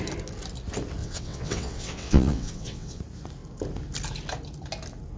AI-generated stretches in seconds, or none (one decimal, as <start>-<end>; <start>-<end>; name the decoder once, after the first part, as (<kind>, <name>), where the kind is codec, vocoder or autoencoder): 1.0-3.0 (vocoder, WaveNeXt)